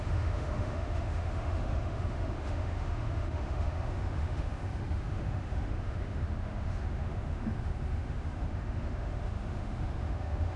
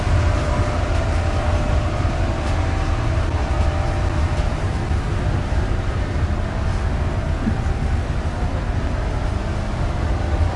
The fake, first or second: first